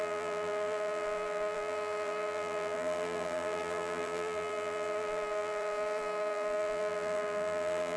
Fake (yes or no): yes